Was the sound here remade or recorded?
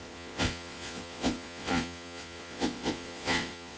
remade